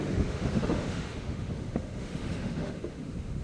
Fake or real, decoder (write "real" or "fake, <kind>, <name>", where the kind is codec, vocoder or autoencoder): fake, autoencoder, DAC-VAE